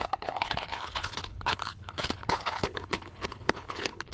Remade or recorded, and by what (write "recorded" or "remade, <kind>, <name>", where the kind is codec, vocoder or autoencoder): remade, codec, HILCodec